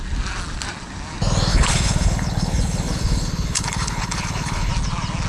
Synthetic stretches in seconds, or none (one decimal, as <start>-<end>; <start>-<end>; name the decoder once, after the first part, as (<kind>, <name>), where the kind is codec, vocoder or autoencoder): 1.5-4.7 (codec, HILCodec)